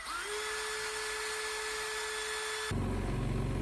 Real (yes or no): yes